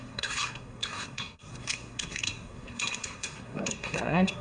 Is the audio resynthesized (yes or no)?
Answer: yes